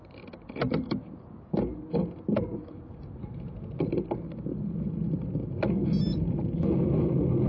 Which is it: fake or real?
real